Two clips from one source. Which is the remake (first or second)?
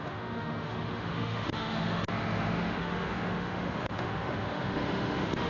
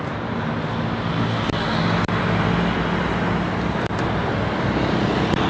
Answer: first